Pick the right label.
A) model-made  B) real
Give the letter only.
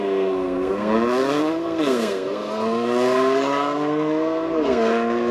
A